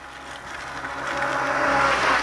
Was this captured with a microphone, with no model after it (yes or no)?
yes